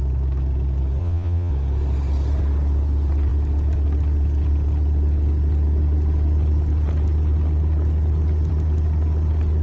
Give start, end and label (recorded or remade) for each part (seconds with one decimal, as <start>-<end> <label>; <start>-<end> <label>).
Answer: 0.0-1.0 recorded; 1.0-1.5 remade; 1.5-9.6 recorded